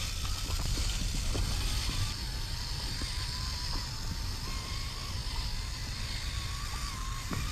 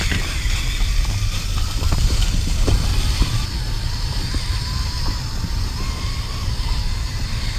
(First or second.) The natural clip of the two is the first